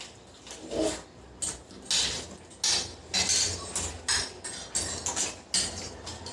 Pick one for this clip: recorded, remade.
recorded